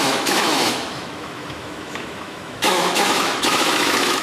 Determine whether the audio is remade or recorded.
remade